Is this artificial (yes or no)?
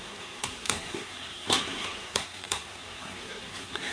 yes